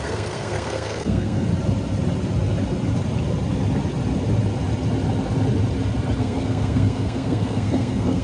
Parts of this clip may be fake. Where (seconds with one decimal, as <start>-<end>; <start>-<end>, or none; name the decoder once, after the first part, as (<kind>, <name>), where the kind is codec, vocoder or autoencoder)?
0.0-1.5 (codec, SNAC); 6.2-8.2